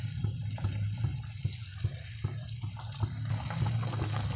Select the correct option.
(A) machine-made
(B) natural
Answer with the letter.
B